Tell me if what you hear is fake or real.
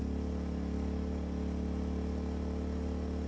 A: real